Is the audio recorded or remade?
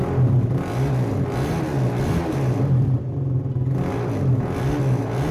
recorded